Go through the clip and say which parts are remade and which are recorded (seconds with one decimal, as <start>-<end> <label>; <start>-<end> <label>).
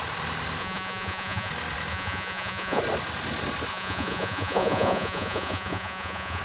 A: 0.0-0.6 recorded; 0.6-1.5 remade; 1.5-1.9 recorded; 1.9-2.8 remade; 2.8-3.7 recorded; 3.7-6.4 remade